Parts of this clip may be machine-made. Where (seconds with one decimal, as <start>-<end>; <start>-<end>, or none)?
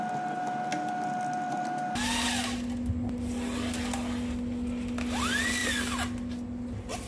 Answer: none